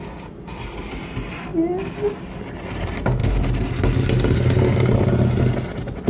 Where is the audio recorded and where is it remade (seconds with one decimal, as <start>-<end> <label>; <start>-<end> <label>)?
0.0-1.5 recorded; 1.5-2.3 remade; 2.3-3.2 recorded; 3.2-5.4 remade; 5.4-6.1 recorded